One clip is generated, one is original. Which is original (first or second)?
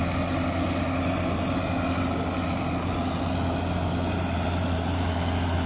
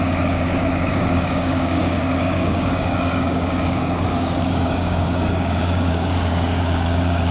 first